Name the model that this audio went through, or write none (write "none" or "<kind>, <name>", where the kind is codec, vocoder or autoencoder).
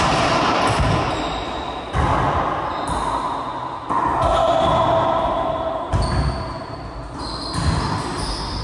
none